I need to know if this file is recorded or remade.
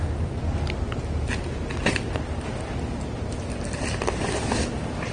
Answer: recorded